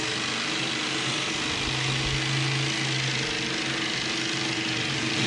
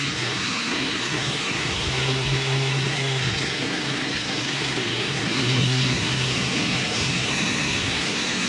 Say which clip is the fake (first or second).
second